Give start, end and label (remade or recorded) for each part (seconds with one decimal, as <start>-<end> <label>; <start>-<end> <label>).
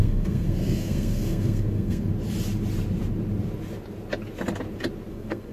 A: 0.0-2.1 remade; 2.1-5.1 recorded; 5.1-5.5 remade